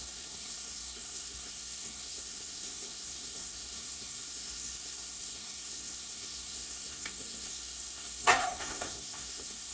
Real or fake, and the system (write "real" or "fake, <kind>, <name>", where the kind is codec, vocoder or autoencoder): fake, codec, SNAC